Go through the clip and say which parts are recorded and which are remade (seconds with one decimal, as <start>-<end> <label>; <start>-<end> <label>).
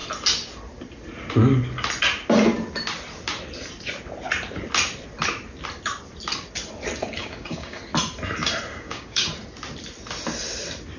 0.0-7.2 recorded; 7.2-7.8 remade; 7.8-8.7 recorded; 8.7-9.3 remade; 9.3-11.0 recorded